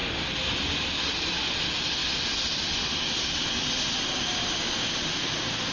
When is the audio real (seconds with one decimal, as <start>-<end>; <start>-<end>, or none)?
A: 0.0-5.7